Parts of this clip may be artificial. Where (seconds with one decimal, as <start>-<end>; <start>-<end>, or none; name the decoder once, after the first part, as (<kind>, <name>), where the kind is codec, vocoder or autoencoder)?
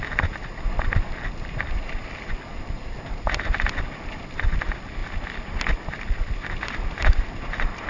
none